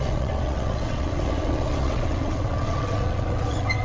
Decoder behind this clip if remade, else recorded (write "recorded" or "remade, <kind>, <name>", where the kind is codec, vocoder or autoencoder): remade, vocoder, WaveNeXt